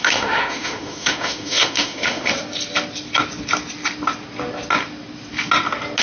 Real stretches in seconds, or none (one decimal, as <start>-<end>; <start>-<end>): 2.3-6.0